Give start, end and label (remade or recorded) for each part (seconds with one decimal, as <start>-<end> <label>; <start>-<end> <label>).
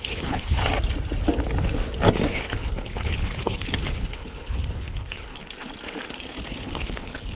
0.0-0.6 remade; 0.6-2.3 recorded; 2.3-5.4 remade; 5.4-6.5 recorded; 6.5-7.3 remade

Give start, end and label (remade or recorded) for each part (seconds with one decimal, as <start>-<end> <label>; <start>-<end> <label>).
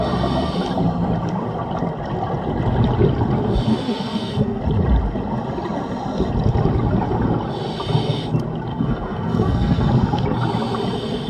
0.0-3.7 recorded; 3.7-4.6 remade; 4.6-8.7 recorded; 8.7-9.9 remade; 9.9-11.3 recorded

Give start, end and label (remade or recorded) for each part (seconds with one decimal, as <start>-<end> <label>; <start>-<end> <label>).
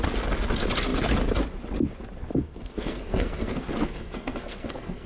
0.0-2.3 recorded; 2.3-5.1 remade